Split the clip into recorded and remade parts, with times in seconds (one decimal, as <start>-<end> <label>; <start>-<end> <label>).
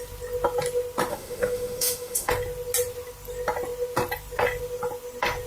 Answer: 0.0-1.1 recorded; 1.1-2.3 remade; 2.3-5.5 recorded